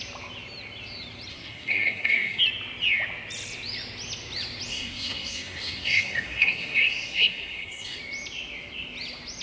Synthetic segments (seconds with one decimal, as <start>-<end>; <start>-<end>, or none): 1.3-2.4; 4.7-8.0